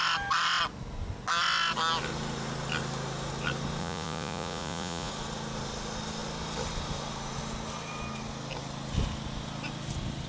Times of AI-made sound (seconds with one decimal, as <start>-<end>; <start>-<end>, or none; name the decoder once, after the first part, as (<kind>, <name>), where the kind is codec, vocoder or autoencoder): 3.8-5.1 (vocoder, Vocos)